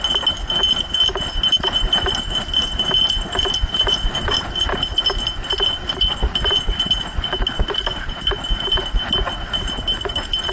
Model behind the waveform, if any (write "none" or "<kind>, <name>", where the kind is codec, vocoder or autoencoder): none